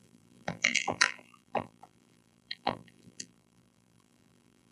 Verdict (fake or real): fake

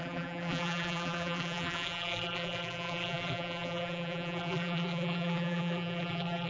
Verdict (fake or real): fake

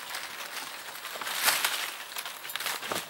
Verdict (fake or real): real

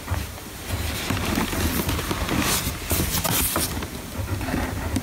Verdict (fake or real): real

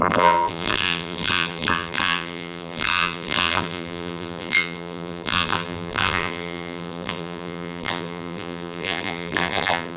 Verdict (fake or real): fake